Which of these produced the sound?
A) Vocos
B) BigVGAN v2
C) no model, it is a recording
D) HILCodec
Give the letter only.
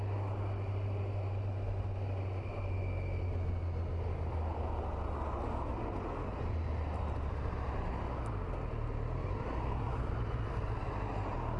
C